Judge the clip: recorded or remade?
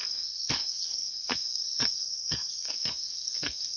remade